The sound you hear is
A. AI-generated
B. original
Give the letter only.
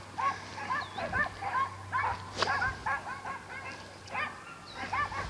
B